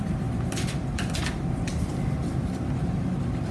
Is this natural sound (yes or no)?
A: yes